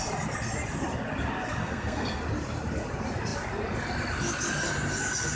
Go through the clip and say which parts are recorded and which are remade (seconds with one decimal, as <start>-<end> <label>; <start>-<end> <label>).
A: 0.0-1.6 recorded; 1.6-2.2 remade; 2.2-5.4 recorded